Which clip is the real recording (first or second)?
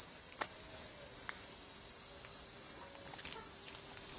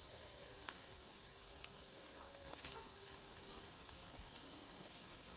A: first